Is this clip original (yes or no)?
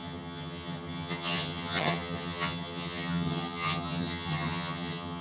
no